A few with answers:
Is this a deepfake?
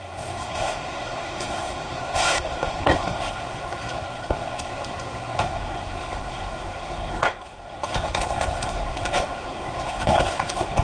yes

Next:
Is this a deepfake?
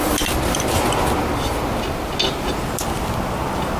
no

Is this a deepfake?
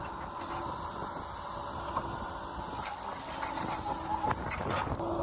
no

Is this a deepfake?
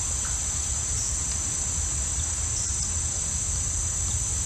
no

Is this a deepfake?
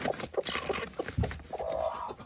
no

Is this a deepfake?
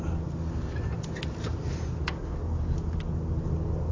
no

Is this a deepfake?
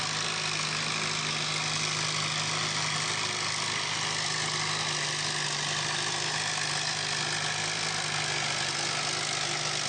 no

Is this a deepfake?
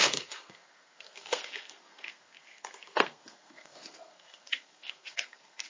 yes